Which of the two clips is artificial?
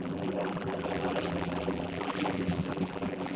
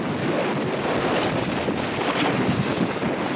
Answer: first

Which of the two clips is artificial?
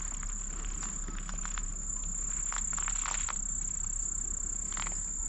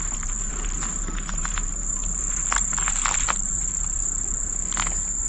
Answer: second